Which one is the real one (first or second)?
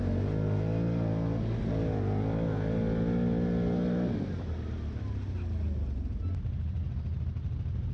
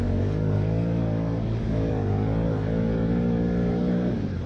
first